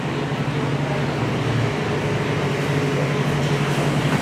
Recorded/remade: recorded